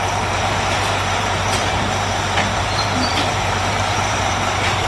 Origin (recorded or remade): remade